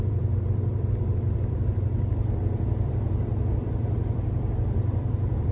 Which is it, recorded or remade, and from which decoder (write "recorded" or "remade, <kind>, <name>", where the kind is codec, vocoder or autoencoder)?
remade, vocoder, BigVGAN v2